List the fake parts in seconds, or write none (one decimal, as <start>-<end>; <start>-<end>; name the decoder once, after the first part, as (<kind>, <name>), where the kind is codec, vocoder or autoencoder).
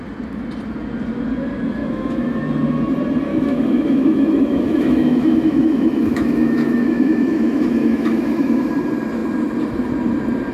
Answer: 1.8-2.4 (autoencoder, DAC-VAE); 3.3-8.6